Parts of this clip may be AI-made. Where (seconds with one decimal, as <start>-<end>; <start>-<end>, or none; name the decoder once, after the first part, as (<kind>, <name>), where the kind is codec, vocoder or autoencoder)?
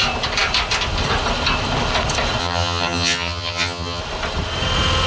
2.4-4.0 (vocoder, HiFi-GAN)